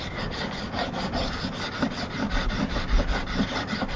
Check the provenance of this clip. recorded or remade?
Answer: recorded